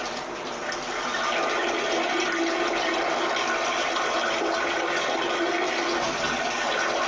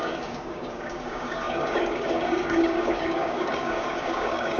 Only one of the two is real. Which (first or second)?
first